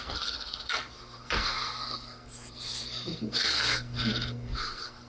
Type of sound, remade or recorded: remade